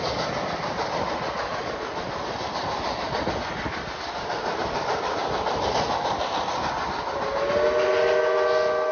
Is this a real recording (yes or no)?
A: yes